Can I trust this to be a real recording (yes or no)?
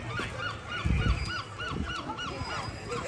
yes